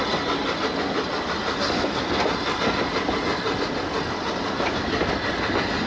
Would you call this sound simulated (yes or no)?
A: no